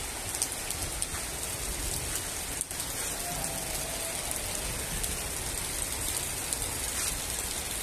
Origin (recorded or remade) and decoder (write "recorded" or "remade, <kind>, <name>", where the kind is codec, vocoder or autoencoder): recorded